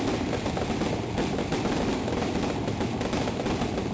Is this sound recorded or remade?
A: recorded